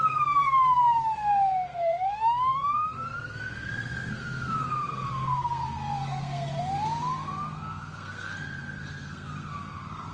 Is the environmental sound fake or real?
fake